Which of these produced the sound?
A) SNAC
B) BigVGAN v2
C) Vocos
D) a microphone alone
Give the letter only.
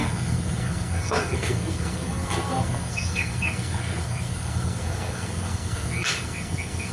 A